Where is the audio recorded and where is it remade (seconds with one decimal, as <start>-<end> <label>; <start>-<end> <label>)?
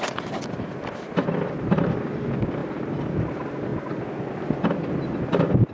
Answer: 0.0-5.7 recorded